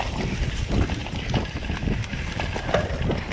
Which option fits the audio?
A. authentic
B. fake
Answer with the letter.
A